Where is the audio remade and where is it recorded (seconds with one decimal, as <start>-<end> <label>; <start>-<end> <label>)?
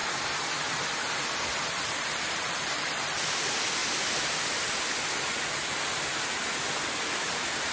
0.0-1.8 recorded; 1.8-3.8 remade; 3.8-6.6 recorded; 6.6-7.7 remade